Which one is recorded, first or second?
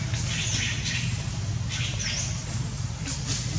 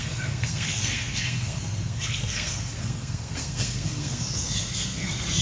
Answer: first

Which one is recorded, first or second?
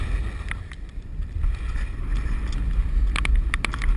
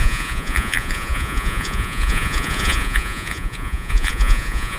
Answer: first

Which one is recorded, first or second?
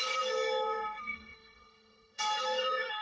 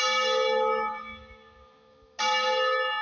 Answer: second